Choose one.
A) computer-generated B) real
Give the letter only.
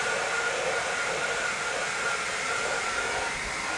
B